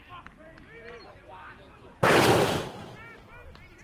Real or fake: real